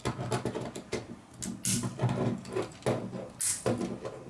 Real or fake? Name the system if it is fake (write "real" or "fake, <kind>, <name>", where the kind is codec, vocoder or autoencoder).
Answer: real